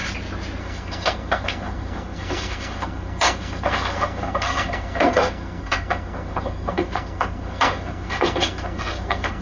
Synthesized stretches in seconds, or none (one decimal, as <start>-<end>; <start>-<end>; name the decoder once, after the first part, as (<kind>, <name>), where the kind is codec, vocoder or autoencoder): 0.6-9.4 (codec, SNAC)